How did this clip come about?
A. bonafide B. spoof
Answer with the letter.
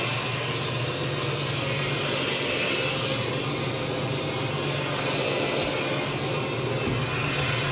A